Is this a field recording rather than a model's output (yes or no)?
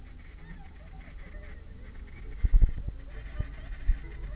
yes